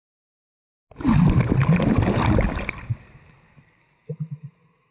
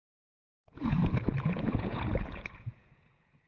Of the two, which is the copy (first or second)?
second